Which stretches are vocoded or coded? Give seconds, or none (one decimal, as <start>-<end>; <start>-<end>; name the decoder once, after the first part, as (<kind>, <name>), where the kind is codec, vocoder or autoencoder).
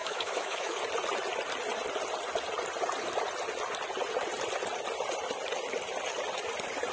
0.0-0.8 (autoencoder, DAC-VAE)